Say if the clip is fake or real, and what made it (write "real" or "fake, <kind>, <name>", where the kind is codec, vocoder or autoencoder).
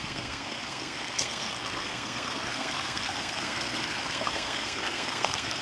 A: fake, codec, SNAC